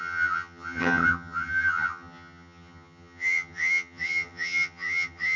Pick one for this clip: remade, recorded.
remade